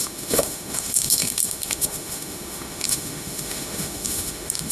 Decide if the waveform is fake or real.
fake